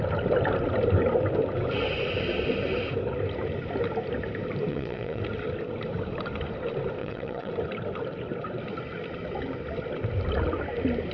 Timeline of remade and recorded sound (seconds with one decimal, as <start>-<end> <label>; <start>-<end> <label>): 0.0-4.7 recorded; 4.7-5.2 remade; 5.2-7.0 recorded; 7.0-7.5 remade; 7.5-11.1 recorded